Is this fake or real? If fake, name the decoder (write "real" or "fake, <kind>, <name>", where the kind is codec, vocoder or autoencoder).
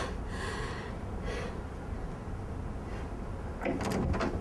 real